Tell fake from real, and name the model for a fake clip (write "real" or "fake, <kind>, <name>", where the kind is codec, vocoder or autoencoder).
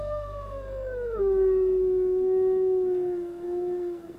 fake, codec, SNAC